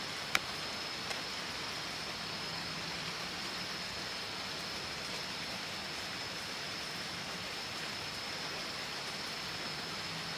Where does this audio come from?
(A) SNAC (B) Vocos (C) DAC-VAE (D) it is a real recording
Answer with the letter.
D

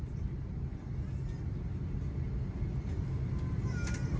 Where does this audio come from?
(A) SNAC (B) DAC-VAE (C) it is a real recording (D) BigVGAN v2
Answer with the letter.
C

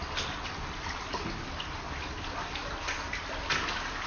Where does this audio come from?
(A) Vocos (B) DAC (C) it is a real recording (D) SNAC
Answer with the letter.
C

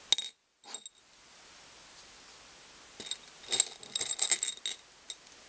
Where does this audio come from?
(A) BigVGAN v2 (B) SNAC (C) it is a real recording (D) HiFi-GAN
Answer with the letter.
C